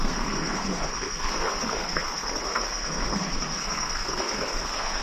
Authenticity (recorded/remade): remade